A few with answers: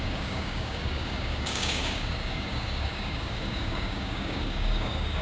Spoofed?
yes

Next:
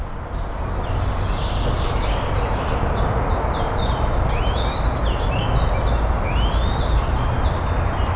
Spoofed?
no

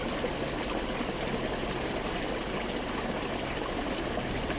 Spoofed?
no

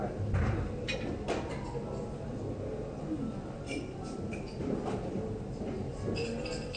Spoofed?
no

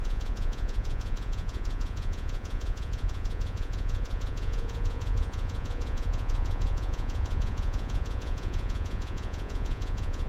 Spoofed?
yes